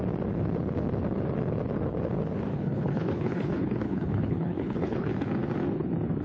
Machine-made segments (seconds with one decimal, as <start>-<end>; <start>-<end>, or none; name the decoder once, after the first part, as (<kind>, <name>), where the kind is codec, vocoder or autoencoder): 2.5-5.1 (codec, HILCodec)